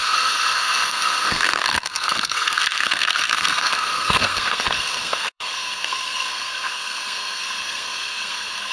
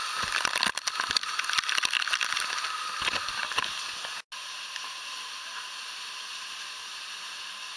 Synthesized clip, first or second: first